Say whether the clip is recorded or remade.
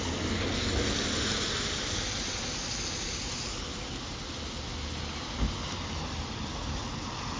recorded